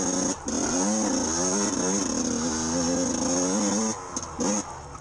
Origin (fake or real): real